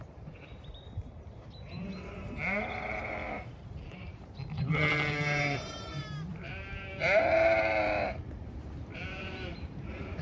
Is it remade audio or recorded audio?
remade